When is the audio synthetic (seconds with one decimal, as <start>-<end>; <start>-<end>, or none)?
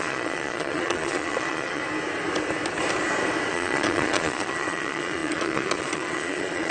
0.0-1.8; 3.5-6.7